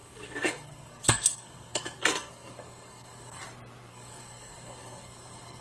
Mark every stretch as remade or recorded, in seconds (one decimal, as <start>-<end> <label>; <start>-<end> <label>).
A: 0.0-3.4 remade; 3.4-3.9 recorded; 3.9-5.6 remade